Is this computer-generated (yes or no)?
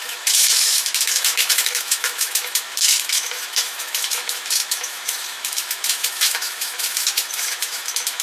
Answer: yes